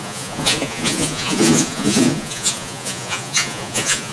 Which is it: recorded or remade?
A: remade